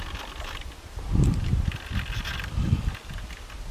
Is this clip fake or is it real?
real